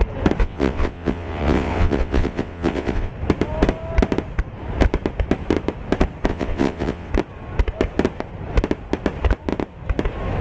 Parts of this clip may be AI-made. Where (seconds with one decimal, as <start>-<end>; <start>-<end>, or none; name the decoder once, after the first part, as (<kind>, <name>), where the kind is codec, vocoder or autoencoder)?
0.4-3.1 (vocoder, WaveNeXt); 6.3-7.1